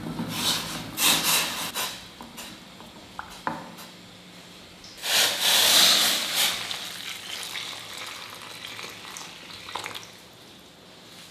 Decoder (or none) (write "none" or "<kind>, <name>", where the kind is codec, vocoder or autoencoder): none